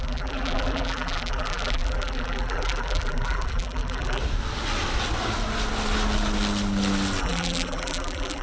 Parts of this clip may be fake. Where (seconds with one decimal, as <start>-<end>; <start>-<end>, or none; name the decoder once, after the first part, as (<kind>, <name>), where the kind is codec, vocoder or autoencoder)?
0.0-4.2 (vocoder, BigVGAN v2); 7.2-8.4